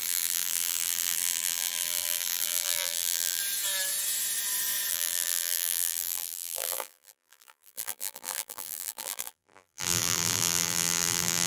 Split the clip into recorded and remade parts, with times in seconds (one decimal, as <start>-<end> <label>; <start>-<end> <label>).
0.0-3.4 remade; 3.4-4.9 recorded; 4.9-11.5 remade